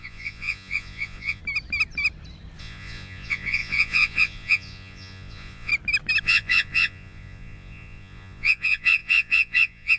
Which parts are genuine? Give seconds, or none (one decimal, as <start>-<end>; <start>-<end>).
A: 1.4-2.6; 5.7-6.2